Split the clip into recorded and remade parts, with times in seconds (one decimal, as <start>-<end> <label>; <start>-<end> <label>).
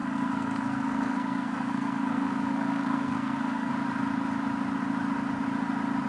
0.0-3.7 remade; 3.7-6.1 recorded